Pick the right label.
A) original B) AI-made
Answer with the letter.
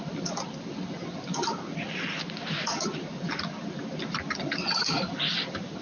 A